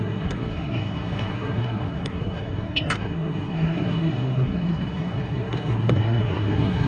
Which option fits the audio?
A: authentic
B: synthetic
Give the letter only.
B